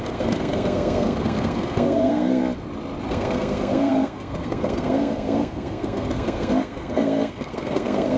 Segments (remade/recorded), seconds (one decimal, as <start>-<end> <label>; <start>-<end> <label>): 0.0-2.4 remade; 2.4-3.1 recorded; 3.1-8.2 remade